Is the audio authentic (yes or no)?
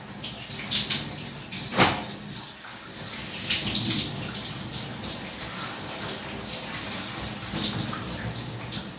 yes